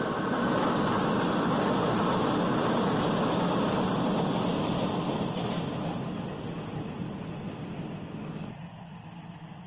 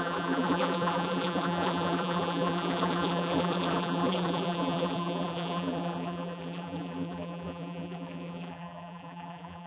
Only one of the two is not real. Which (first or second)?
second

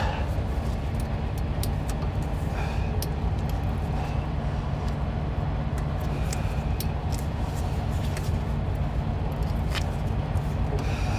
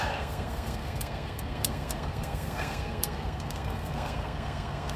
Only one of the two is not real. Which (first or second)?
second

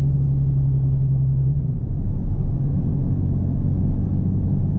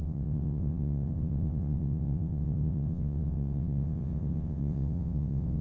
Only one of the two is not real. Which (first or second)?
second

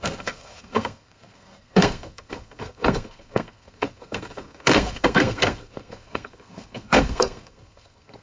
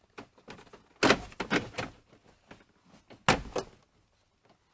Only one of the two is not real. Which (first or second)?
first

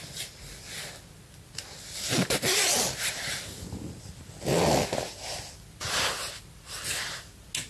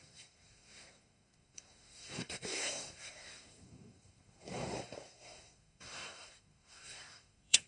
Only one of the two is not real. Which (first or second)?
second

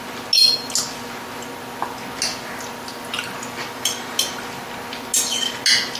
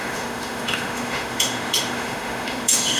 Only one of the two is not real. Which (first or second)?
second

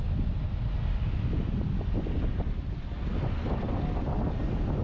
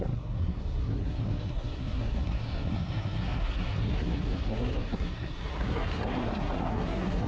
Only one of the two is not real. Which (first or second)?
second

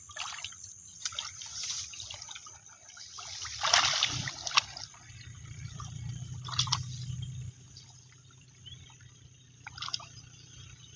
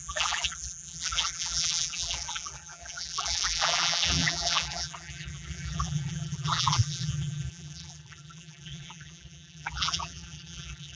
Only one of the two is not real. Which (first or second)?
second